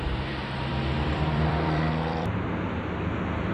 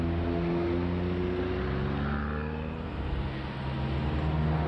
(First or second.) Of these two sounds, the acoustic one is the second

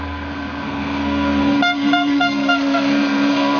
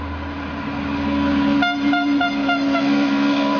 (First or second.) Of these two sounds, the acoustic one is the second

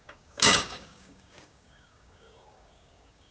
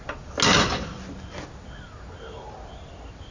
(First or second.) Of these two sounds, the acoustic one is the second